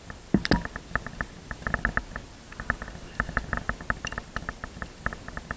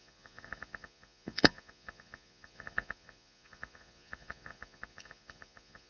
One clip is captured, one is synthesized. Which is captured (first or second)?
first